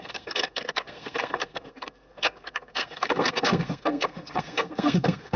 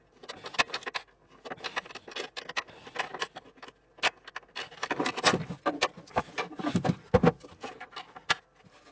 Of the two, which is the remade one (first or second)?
first